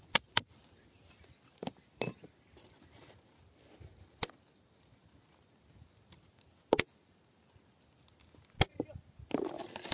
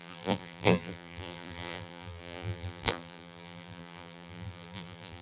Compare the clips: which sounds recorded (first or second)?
first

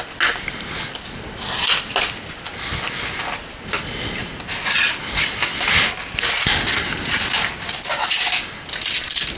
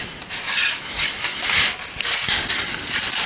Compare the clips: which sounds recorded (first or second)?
first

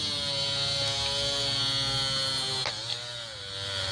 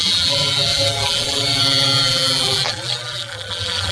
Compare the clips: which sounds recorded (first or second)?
first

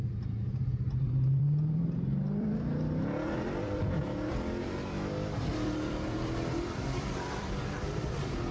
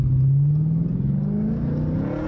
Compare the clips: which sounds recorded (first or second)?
second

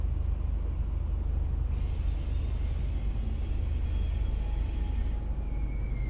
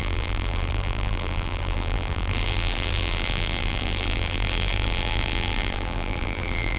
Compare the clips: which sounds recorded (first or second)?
first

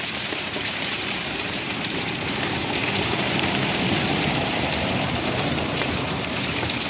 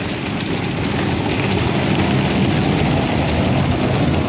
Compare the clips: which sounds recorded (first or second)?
second